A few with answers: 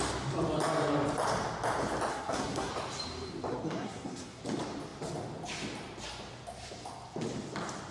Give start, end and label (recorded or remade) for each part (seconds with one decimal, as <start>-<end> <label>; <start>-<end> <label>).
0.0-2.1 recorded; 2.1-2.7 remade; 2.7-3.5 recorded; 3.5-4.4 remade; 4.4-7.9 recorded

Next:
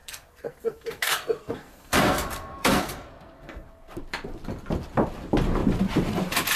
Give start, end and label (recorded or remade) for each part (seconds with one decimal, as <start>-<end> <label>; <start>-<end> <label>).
0.0-4.0 remade; 4.0-6.6 recorded

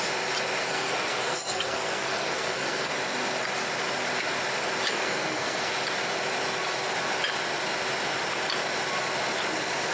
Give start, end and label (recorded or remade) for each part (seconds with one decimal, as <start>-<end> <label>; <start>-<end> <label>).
0.0-0.6 recorded; 0.6-2.9 remade; 2.9-4.9 recorded; 4.9-5.7 remade; 5.7-9.9 recorded

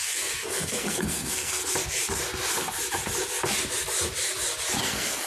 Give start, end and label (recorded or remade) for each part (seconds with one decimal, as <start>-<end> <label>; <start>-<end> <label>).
0.0-1.6 remade; 1.6-4.8 recorded; 4.8-5.3 remade

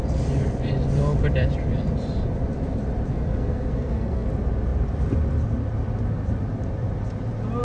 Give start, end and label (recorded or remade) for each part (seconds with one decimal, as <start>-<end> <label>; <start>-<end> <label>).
0.0-3.1 recorded; 3.1-4.3 remade; 4.3-7.6 recorded